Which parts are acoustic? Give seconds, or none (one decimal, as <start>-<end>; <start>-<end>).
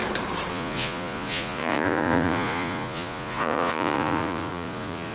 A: 0.0-0.5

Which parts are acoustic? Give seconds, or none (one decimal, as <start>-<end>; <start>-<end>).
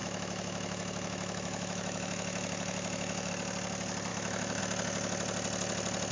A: 3.3-4.1; 4.6-6.1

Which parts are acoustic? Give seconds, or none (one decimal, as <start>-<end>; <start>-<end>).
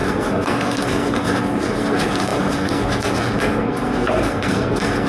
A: none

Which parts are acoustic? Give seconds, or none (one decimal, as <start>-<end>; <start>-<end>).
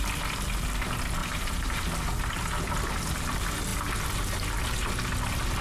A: 0.0-1.2; 1.8-5.6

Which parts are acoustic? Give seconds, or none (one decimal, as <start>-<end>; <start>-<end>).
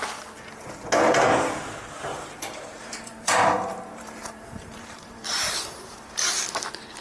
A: 0.0-2.1; 6.3-7.0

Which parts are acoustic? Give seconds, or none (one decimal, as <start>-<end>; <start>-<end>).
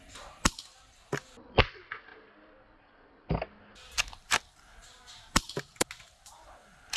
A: 0.0-7.0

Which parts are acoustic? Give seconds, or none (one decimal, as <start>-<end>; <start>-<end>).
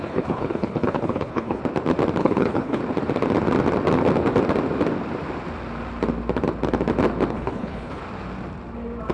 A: 1.6-2.2; 2.8-7.3; 8.0-9.1